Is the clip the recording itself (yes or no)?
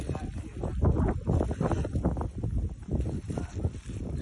yes